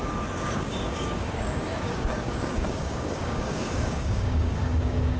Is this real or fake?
fake